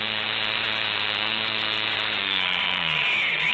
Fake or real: fake